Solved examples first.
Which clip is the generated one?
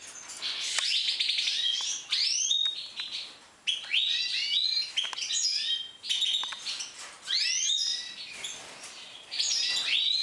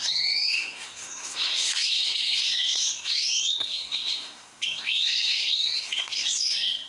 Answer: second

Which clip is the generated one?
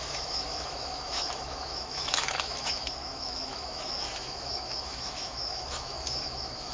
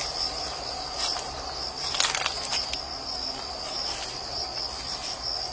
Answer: first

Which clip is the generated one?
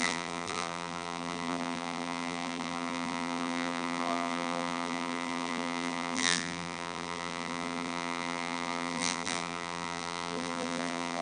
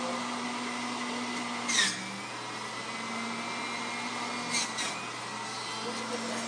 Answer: first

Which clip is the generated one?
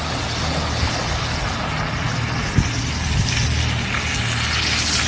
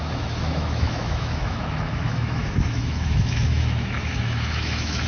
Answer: second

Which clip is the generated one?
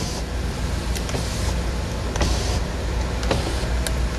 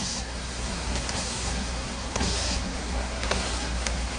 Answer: second